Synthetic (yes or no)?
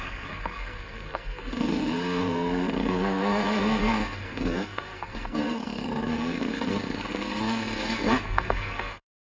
yes